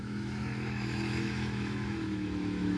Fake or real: fake